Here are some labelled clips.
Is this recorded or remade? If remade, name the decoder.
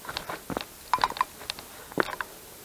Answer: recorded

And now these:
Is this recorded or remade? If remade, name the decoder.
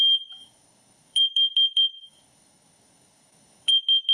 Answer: remade, codec, DAC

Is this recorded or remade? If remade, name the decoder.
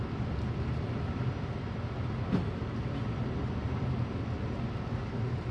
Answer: recorded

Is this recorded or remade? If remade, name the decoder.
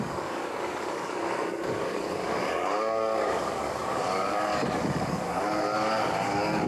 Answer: remade, codec, DAC